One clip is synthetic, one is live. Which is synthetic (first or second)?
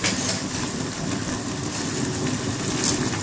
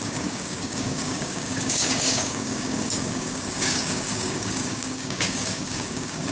second